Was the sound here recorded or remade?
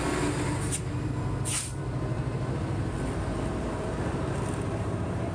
remade